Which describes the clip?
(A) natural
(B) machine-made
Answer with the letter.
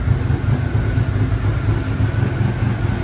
A